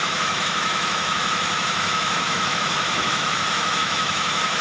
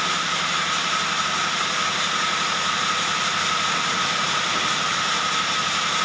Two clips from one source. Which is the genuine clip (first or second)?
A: second